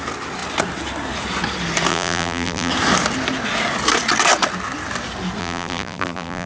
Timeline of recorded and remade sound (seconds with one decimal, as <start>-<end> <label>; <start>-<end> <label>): 0.0-1.9 recorded; 1.9-2.7 remade; 2.7-5.4 recorded; 5.4-6.5 remade